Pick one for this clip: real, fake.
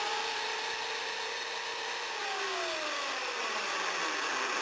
real